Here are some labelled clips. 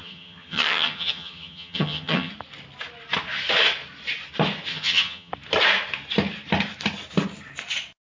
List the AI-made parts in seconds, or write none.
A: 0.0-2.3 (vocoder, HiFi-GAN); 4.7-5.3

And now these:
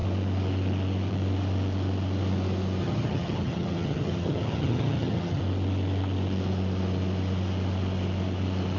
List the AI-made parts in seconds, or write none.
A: 2.8-5.4 (vocoder, HiFi-GAN)

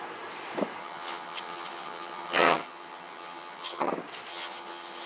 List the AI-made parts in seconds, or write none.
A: 0.8-3.9 (vocoder, HiFi-GAN); 4.3-5.1